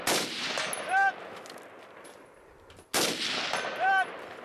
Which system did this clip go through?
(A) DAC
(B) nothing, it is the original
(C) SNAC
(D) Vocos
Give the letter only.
B